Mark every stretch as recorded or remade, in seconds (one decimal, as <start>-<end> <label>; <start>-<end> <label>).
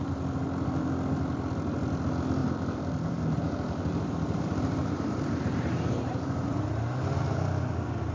0.0-2.4 recorded; 2.4-6.6 remade; 6.6-8.1 recorded